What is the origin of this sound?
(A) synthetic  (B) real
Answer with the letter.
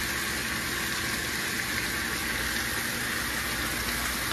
B